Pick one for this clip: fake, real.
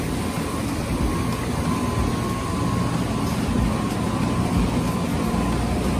real